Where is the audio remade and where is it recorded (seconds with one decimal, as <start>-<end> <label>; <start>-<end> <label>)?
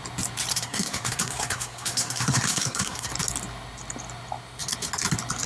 0.0-0.5 recorded; 0.5-3.1 remade; 3.1-5.5 recorded